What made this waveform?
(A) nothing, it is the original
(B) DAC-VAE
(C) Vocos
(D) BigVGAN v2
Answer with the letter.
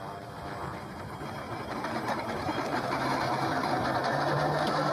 D